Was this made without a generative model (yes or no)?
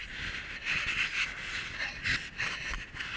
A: yes